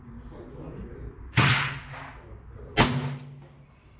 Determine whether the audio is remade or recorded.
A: recorded